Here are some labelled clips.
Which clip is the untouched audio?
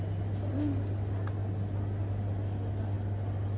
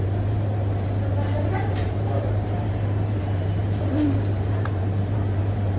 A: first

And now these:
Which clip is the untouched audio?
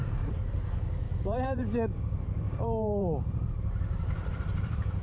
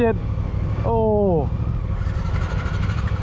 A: second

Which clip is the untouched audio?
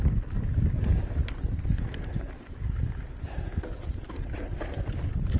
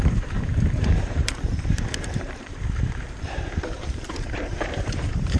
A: first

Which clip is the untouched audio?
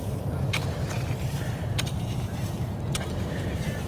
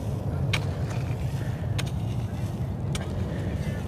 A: second